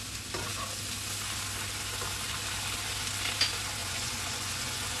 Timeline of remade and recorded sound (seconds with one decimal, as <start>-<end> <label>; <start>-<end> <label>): 0.0-3.8 recorded; 3.8-5.0 remade